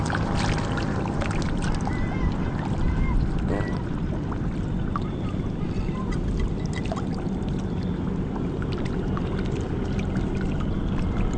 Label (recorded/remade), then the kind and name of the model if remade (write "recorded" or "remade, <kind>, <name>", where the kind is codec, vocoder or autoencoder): recorded